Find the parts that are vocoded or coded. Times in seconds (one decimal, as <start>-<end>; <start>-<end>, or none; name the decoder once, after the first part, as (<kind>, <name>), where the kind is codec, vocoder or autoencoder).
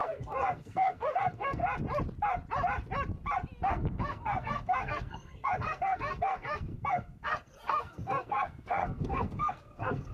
0.0-1.6 (codec, SNAC); 3.7-10.1